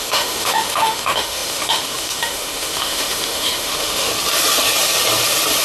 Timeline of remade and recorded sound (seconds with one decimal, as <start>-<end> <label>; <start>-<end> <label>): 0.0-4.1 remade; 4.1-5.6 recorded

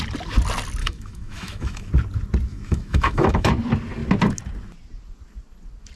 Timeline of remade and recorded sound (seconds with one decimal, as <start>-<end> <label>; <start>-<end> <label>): 0.0-0.8 recorded; 0.8-1.9 remade; 1.9-2.5 recorded; 2.5-3.5 remade; 3.5-6.0 recorded

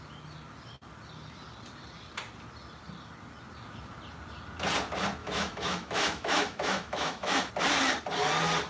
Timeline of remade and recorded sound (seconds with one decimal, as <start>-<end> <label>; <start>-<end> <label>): 0.0-5.2 recorded; 5.2-7.5 remade; 7.5-8.7 recorded